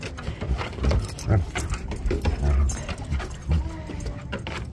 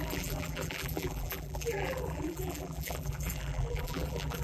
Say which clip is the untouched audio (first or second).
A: first